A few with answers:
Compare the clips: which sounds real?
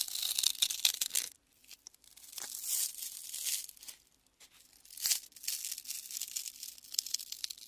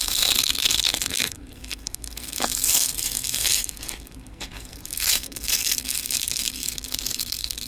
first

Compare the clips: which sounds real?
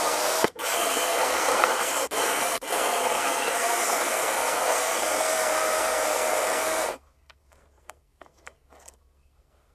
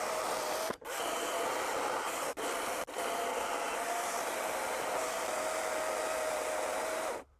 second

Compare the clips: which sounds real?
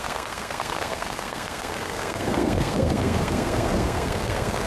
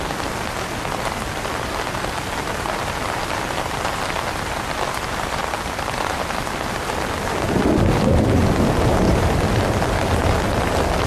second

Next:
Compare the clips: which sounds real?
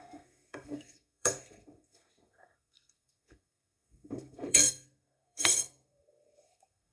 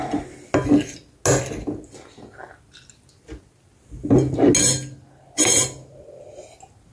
second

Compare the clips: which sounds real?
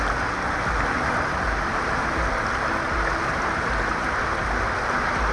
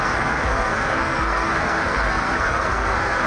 first